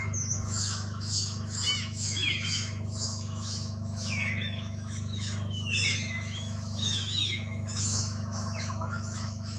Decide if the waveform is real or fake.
fake